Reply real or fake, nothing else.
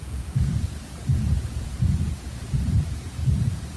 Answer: fake